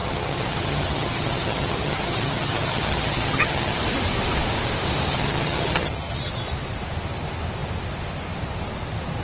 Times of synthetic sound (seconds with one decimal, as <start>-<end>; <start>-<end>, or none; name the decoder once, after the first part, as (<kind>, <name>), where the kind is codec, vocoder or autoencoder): 0.0-3.8 (vocoder, HiFi-GAN); 5.1-6.3